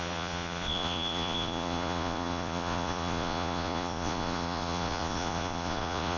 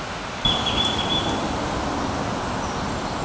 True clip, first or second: second